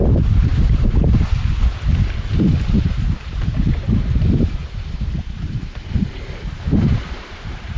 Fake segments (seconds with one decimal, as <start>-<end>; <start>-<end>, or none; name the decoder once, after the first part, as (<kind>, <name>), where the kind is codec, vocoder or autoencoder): 0.0-0.5 (vocoder, BigVGAN v2); 2.3-7.8